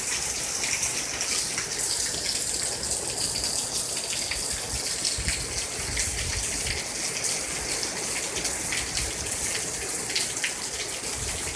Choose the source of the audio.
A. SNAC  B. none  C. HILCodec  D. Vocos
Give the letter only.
B